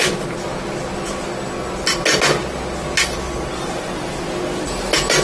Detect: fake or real real